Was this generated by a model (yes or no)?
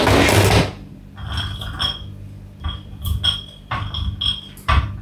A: no